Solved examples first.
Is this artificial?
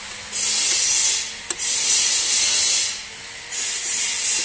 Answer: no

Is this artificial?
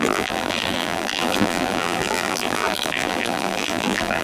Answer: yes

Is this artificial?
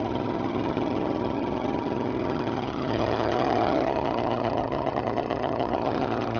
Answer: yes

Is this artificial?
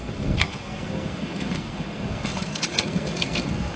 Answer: yes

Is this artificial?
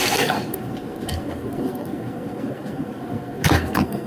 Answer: yes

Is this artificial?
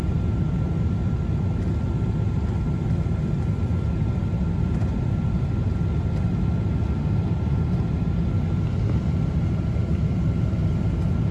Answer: no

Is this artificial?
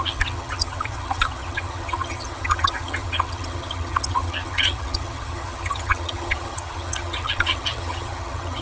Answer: yes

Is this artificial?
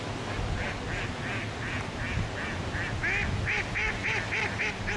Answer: no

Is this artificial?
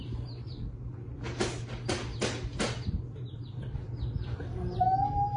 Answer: no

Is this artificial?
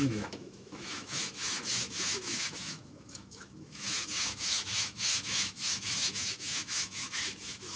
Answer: yes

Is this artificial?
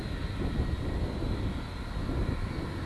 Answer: no